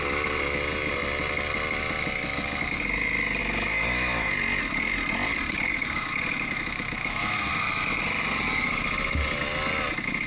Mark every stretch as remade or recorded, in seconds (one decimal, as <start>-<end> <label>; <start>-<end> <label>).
0.0-3.4 recorded; 3.4-4.3 remade; 4.3-5.7 recorded; 5.7-7.5 remade; 7.5-10.3 recorded